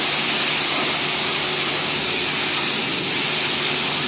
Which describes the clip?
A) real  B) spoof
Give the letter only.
A